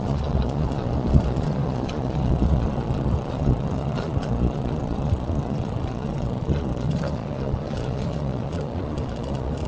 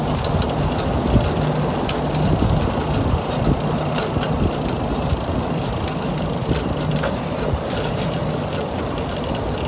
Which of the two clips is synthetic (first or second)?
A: first